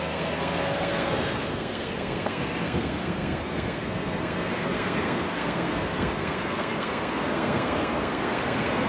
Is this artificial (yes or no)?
yes